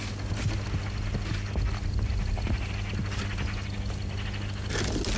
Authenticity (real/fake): real